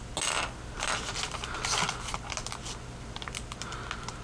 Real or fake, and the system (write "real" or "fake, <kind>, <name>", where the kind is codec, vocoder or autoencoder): real